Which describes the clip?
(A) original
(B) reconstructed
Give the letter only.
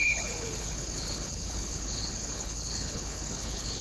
B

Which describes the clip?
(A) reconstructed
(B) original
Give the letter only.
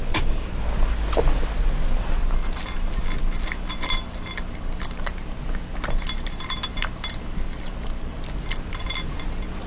B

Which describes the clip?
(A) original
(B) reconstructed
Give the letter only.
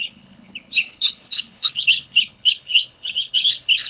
B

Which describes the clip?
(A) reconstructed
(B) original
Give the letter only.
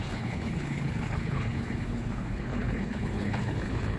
A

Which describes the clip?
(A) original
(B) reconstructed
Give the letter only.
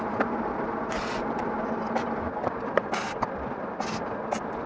A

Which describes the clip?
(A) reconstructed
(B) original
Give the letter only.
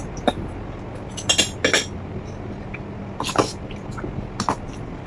B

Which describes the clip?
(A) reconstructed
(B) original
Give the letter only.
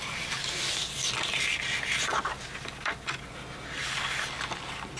B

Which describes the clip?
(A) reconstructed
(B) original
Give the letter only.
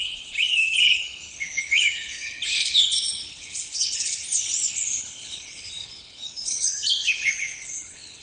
A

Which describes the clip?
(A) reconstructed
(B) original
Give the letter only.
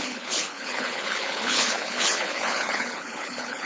A